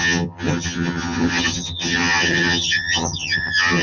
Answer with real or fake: fake